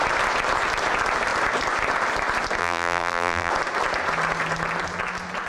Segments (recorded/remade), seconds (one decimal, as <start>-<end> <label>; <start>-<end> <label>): 0.0-2.6 recorded; 2.6-3.5 remade; 3.5-5.5 recorded